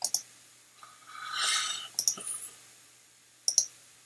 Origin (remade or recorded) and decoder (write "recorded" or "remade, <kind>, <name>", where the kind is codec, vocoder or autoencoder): recorded